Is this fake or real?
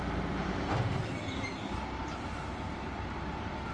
fake